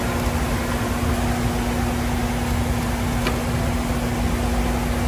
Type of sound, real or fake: real